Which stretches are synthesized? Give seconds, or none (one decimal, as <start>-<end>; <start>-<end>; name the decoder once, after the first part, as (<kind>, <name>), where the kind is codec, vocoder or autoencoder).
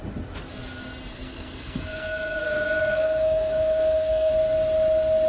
1.1-4.3 (codec, SNAC)